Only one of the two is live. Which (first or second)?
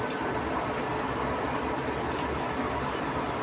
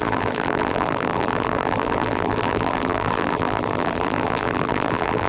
first